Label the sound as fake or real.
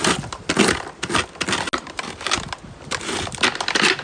real